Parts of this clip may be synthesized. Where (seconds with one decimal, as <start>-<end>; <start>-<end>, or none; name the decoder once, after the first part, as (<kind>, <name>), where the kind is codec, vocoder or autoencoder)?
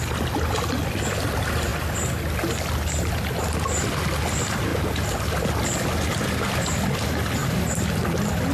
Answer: none